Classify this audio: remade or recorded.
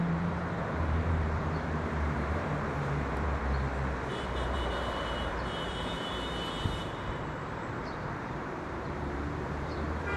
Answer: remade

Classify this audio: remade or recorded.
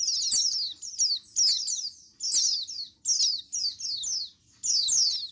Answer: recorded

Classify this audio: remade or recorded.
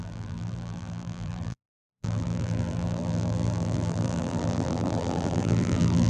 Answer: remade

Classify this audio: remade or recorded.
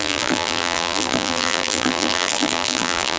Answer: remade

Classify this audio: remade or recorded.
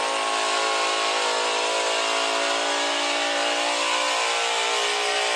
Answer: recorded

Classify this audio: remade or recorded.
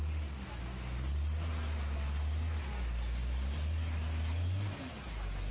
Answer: recorded